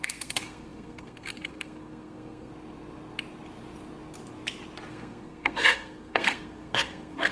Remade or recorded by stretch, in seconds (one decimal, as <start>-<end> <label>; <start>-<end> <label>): 0.0-2.5 remade; 2.5-4.9 recorded; 4.9-7.3 remade